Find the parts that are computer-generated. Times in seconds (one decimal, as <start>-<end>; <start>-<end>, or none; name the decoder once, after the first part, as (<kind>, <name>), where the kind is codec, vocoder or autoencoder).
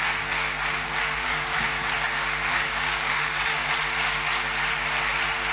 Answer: 1.0-1.6 (codec, DAC); 2.5-3.7